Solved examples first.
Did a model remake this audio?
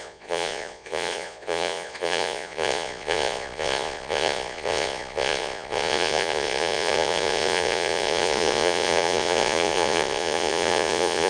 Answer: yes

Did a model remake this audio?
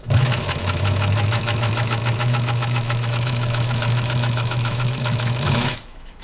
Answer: yes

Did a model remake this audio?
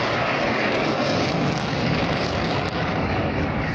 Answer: yes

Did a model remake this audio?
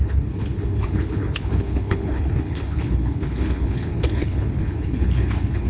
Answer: yes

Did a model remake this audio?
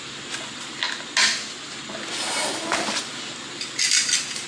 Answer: no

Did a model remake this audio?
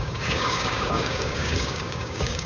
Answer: yes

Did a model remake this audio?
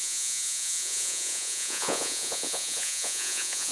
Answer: yes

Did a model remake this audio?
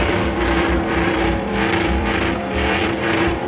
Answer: yes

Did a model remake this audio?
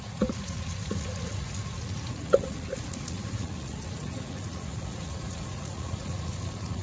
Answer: yes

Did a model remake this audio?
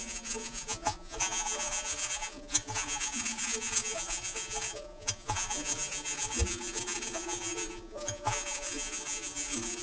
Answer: yes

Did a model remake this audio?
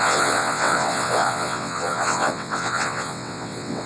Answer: yes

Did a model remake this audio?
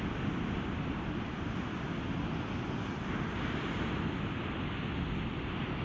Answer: no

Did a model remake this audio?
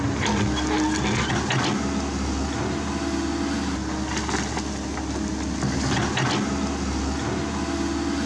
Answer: no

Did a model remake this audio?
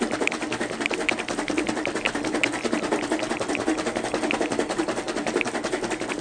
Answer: no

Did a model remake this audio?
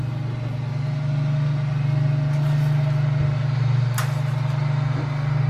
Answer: no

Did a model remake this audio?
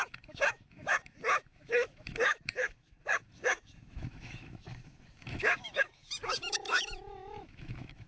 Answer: yes